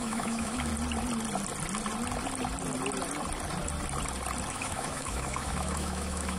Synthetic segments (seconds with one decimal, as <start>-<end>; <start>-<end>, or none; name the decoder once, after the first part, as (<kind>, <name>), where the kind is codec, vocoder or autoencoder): 0.0-0.7 (autoencoder, DAC-VAE); 4.5-6.4